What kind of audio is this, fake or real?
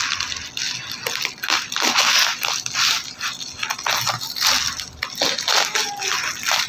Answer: real